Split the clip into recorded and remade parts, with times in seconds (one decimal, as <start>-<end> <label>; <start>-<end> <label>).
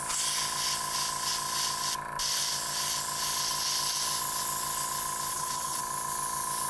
0.0-5.3 recorded; 5.3-5.8 remade; 5.8-6.7 recorded